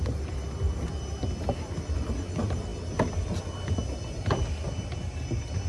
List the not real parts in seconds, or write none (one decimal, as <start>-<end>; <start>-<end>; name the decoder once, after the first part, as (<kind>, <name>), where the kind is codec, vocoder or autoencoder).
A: none